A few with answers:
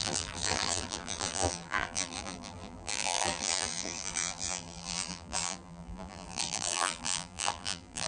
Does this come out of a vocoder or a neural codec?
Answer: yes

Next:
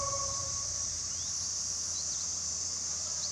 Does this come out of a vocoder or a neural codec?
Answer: yes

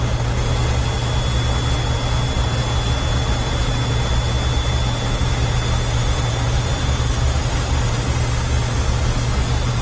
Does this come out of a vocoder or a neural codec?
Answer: no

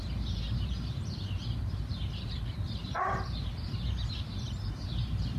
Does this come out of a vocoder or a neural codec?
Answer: yes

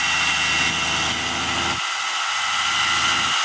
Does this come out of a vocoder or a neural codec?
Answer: no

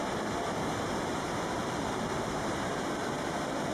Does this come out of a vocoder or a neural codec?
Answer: yes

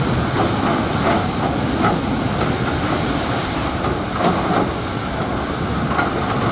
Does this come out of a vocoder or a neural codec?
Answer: no